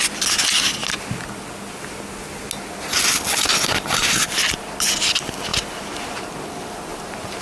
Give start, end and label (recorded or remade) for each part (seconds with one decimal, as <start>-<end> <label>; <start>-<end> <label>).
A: 0.0-5.5 recorded; 5.5-6.2 remade; 6.2-6.9 recorded; 6.9-7.4 remade